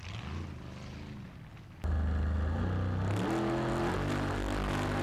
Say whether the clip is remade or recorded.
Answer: recorded